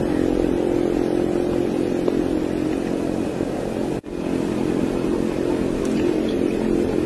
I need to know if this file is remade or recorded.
recorded